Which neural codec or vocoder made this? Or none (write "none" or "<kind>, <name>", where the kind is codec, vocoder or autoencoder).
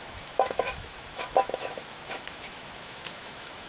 autoencoder, DAC-VAE